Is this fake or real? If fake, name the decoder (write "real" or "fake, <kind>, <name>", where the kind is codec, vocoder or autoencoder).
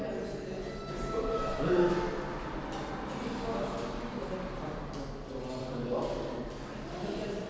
real